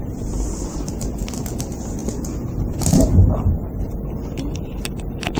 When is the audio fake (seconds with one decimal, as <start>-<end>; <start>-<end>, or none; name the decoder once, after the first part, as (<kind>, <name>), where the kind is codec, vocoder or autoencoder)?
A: none